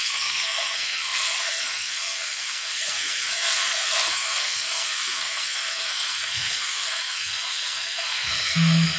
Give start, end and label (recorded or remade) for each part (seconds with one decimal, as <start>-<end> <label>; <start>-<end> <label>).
0.0-9.0 remade